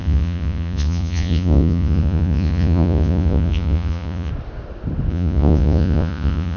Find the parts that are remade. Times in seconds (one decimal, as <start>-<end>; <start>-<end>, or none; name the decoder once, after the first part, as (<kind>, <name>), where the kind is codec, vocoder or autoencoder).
0.0-4.3 (vocoder, Vocos); 5.1-6.6